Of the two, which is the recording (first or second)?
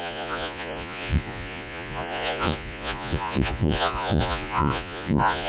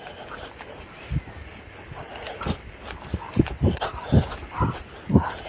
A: second